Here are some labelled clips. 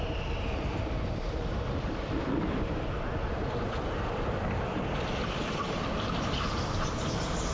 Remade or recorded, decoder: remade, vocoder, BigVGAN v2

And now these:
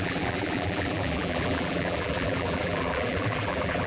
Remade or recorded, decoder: remade, vocoder, BigVGAN v2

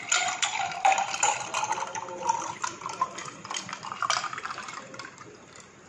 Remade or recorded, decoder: remade, vocoder, BigVGAN v2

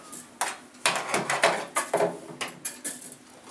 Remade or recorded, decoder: recorded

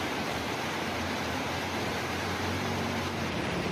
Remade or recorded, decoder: remade, vocoder, BigVGAN v2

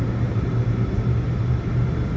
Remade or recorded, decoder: remade, vocoder, BigVGAN v2